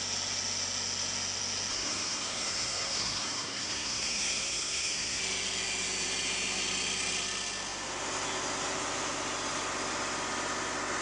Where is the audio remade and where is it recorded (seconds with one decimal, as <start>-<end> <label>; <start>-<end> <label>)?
0.0-1.7 recorded; 1.7-5.2 remade; 5.2-11.0 recorded